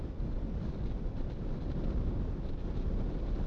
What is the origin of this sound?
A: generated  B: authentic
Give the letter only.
B